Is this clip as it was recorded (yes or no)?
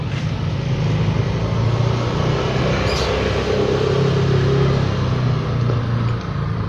yes